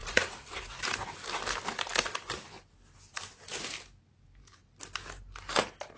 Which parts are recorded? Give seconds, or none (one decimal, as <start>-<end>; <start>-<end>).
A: 0.8-6.0